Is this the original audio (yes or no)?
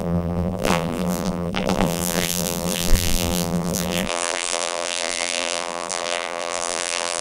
no